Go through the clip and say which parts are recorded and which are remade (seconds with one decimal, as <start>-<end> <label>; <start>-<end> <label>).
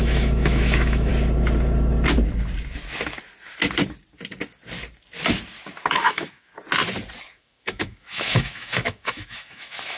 0.0-1.1 remade; 1.1-5.9 recorded; 5.9-6.5 remade; 6.5-7.3 recorded; 7.3-10.0 remade